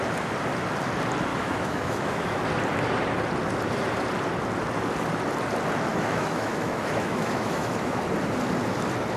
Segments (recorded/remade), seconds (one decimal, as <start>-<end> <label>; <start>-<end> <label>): 0.0-1.3 recorded; 1.3-2.4 remade; 2.4-5.9 recorded; 5.9-8.0 remade; 8.0-9.2 recorded